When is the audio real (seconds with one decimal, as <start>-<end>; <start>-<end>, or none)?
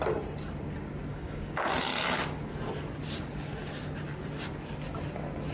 0.0-1.1; 1.7-5.5